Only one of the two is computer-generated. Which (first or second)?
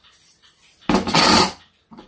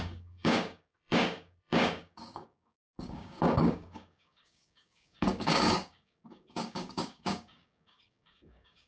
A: second